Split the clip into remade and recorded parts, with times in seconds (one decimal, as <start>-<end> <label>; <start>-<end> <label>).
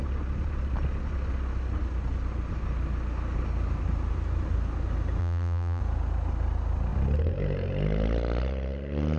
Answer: 0.0-5.2 recorded; 5.2-5.8 remade; 5.8-9.2 recorded